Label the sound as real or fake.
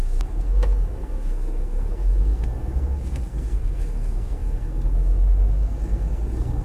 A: fake